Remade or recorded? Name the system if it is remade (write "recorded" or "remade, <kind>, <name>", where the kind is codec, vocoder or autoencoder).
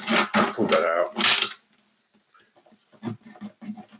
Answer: recorded